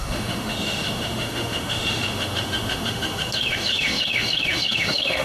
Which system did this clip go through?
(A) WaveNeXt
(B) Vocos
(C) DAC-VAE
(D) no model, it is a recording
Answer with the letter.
C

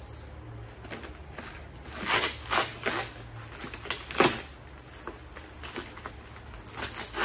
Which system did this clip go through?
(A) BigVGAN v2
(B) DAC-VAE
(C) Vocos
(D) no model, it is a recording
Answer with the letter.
D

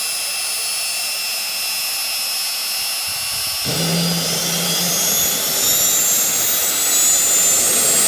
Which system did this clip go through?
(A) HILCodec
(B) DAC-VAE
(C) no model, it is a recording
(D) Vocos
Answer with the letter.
C